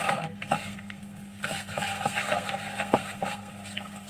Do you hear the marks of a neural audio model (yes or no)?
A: yes